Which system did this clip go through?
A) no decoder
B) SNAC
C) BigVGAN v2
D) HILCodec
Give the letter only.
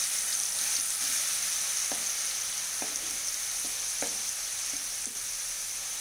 A